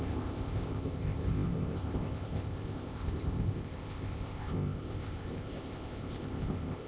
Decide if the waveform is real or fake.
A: fake